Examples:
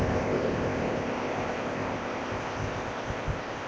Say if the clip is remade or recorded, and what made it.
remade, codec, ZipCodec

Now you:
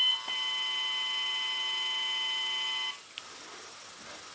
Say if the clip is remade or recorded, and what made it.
recorded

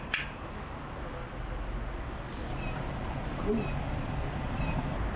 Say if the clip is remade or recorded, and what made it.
recorded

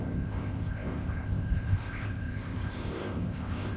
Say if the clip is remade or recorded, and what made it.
remade, codec, ZipCodec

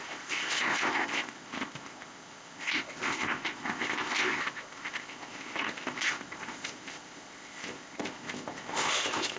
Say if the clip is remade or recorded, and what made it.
remade, codec, ZipCodec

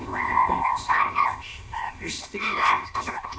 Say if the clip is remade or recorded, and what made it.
remade, codec, ZipCodec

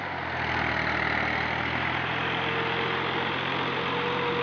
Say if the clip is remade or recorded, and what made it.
recorded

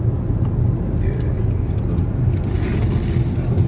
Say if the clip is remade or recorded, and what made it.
recorded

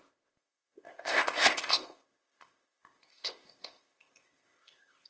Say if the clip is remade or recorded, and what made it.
remade, codec, ZipCodec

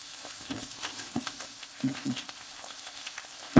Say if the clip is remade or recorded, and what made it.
remade, codec, ZipCodec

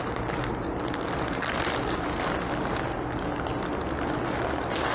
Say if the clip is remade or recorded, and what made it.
recorded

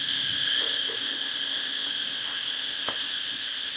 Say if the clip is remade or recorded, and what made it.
remade, codec, ZipCodec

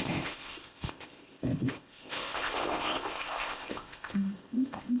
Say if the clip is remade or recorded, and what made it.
remade, codec, ZipCodec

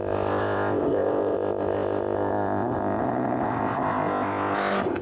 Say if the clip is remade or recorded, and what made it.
remade, codec, ZipCodec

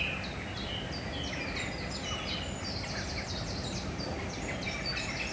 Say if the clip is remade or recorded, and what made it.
recorded